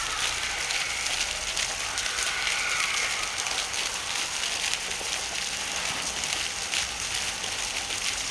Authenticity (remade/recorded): recorded